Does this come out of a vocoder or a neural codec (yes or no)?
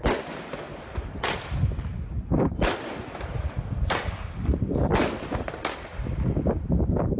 no